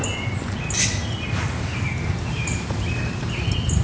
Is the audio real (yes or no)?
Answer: yes